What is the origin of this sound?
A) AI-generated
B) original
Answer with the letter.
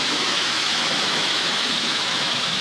A